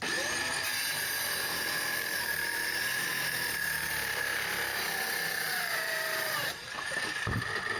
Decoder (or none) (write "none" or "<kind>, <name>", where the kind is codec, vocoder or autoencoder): vocoder, BigVGAN v2